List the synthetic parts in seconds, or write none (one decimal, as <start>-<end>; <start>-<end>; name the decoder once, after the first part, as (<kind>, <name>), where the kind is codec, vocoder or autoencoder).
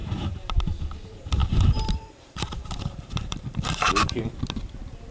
1.4-4.3 (vocoder, BigVGAN v2)